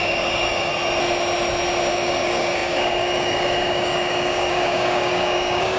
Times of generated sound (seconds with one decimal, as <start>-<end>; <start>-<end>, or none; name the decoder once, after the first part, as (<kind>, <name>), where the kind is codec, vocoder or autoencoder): 0.0-0.7 (codec, DAC); 1.9-5.8